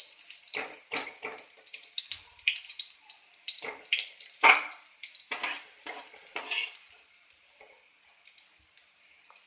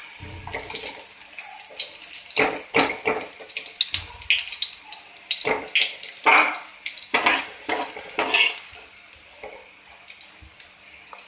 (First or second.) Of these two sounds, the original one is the second